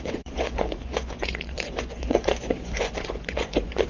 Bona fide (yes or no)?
no